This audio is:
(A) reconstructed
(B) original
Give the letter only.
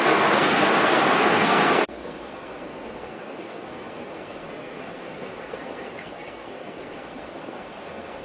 A